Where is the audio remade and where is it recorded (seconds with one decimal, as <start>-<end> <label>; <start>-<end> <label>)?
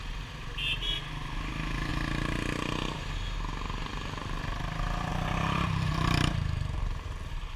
0.0-5.1 recorded; 5.1-7.6 remade